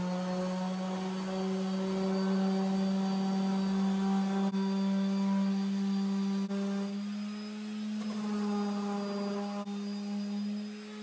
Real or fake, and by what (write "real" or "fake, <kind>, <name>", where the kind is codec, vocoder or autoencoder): real